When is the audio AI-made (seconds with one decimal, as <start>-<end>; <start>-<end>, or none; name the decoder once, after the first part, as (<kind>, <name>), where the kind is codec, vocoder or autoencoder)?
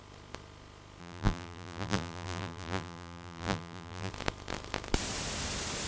1.0-4.1 (vocoder, BigVGAN v2)